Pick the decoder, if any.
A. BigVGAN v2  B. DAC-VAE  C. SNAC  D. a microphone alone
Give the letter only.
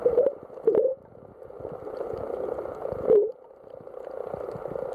D